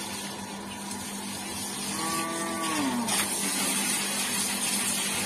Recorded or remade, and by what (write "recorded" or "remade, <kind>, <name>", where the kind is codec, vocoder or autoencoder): recorded